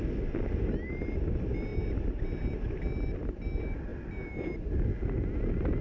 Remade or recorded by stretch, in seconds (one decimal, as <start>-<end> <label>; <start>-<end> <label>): 0.0-5.8 recorded

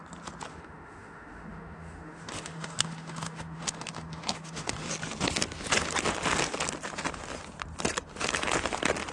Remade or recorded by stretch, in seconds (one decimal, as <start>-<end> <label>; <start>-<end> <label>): 0.0-0.5 recorded; 0.5-4.9 remade; 4.9-9.1 recorded